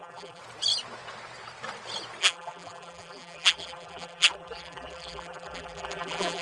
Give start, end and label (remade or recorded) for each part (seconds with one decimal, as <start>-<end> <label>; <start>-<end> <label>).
0.0-0.4 remade; 0.4-2.2 recorded; 2.2-6.4 remade

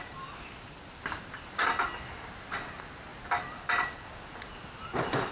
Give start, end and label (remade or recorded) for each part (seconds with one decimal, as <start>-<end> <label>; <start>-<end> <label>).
0.0-5.3 recorded

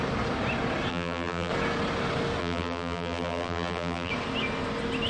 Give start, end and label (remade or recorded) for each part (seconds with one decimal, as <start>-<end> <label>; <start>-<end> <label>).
0.0-0.9 recorded; 0.9-1.5 remade; 1.5-2.4 recorded; 2.4-4.1 remade; 4.1-5.1 recorded

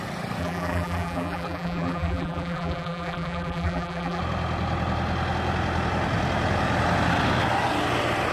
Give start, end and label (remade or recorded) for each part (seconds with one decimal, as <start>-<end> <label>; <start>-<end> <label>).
0.0-0.4 recorded; 0.4-4.2 remade; 4.2-8.3 recorded

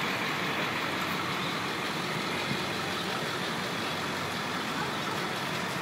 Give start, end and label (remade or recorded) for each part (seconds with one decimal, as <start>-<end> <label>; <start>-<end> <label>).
0.0-5.8 recorded

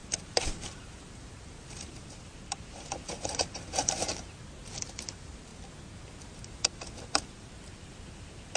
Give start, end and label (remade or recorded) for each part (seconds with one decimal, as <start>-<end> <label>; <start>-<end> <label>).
0.0-4.1 remade; 4.1-4.8 recorded; 4.8-5.5 remade; 5.5-8.6 recorded

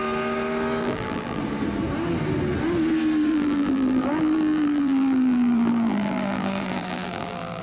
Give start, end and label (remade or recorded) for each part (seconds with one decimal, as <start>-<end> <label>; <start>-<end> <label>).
0.0-0.8 recorded; 0.8-1.4 remade; 1.4-3.3 recorded; 3.3-7.6 remade